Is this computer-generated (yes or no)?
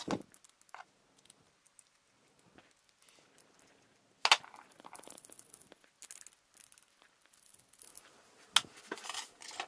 no